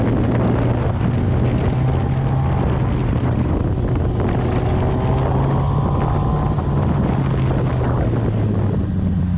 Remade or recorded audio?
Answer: recorded